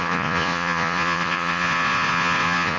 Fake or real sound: fake